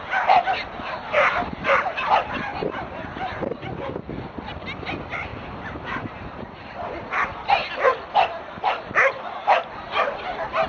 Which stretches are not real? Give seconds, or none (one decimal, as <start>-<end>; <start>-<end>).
2.5-3.7; 5.3-6.7